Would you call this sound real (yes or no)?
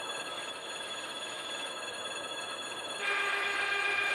no